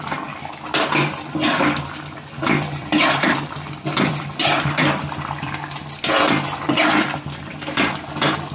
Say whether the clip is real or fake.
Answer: fake